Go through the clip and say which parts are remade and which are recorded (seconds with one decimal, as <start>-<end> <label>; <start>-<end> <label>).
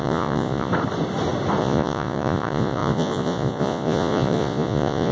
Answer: 0.0-0.7 remade; 0.7-1.6 recorded; 1.6-5.1 remade